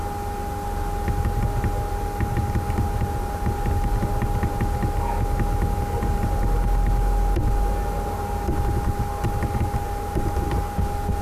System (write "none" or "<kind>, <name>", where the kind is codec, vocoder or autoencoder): none